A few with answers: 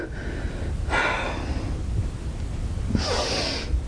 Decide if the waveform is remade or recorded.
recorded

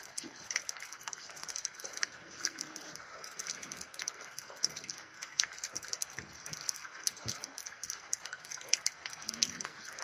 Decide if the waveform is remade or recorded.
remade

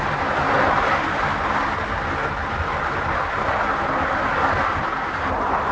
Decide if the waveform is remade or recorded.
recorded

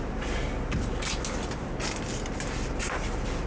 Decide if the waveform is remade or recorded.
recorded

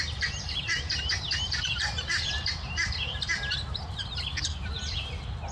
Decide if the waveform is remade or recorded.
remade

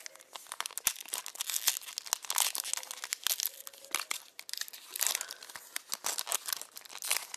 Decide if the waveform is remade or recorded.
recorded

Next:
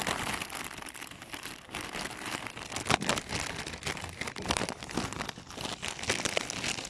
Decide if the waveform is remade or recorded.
recorded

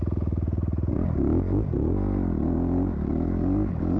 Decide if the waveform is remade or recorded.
recorded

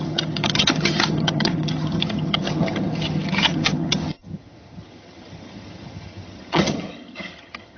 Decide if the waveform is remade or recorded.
remade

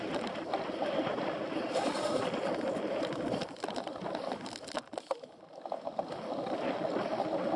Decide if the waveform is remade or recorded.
recorded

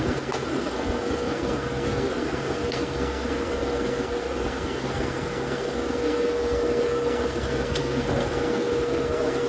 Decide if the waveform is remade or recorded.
remade